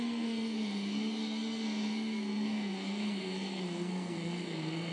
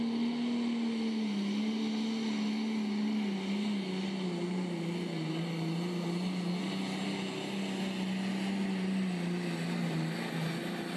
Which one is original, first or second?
second